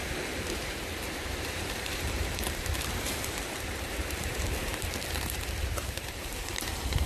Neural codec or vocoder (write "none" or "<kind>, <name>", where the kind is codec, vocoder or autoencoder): vocoder, BigVGAN v2